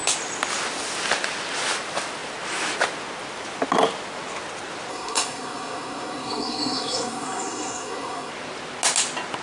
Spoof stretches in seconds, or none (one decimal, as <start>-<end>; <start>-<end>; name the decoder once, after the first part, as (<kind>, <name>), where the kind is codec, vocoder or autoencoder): 4.9-8.3 (codec, SNAC)